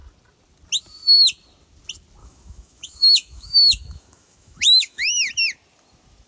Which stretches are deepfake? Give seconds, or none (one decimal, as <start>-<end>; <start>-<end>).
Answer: 2.2-5.3